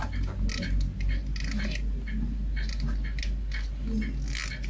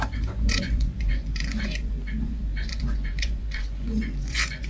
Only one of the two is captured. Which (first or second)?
first